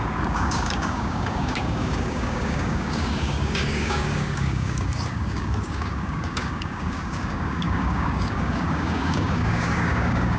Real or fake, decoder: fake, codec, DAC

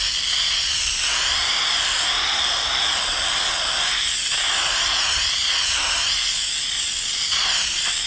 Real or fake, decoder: real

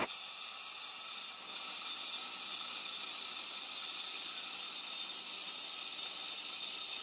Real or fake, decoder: real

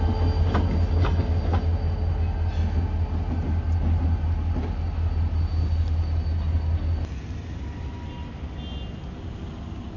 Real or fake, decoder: real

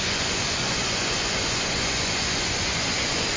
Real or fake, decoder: fake, vocoder, Vocos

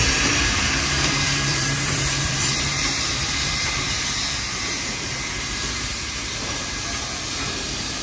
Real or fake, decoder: fake, vocoder, BigVGAN v2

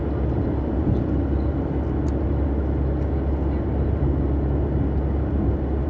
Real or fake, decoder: real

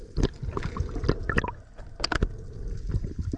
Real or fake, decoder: real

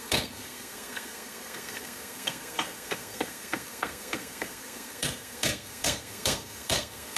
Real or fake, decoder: fake, codec, SNAC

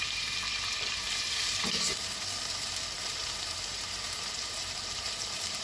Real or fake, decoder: fake, vocoder, BigVGAN v2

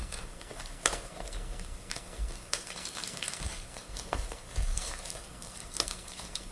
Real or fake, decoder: fake, codec, SNAC